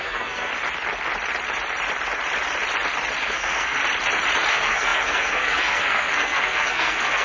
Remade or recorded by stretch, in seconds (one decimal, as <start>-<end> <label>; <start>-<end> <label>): 0.0-0.5 remade; 0.5-3.2 recorded; 3.2-3.8 remade; 3.8-4.5 recorded; 4.5-7.2 remade